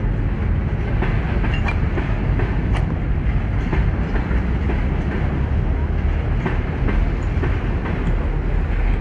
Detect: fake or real real